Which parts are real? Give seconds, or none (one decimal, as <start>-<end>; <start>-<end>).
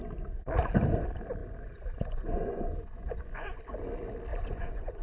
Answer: 0.0-1.4; 3.6-4.3